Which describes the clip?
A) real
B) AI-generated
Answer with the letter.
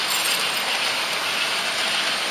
A